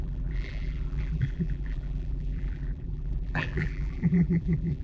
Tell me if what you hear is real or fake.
fake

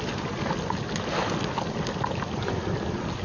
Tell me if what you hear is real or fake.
real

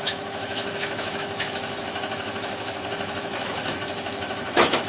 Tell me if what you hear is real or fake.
fake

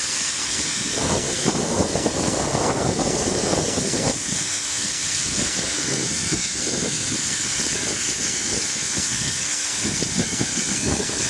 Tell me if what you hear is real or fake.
fake